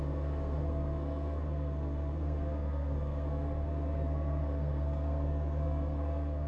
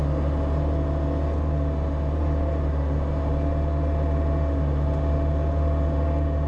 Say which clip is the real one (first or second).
second